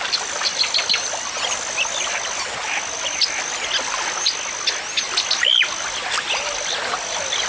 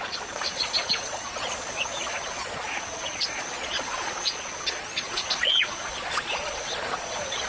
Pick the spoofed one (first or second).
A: second